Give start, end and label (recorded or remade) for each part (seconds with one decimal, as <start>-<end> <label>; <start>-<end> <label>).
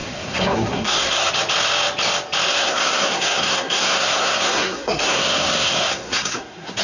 0.0-1.3 remade; 1.3-2.5 recorded; 2.5-6.8 remade